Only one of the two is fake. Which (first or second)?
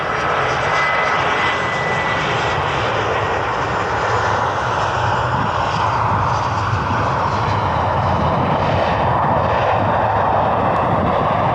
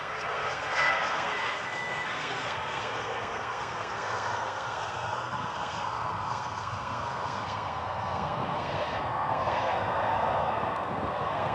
second